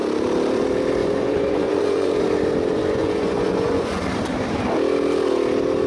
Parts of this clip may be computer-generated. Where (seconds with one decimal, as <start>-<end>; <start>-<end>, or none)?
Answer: 1.0-2.2; 2.7-4.0